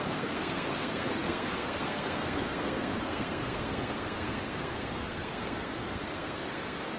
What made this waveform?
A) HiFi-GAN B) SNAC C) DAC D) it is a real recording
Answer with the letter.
B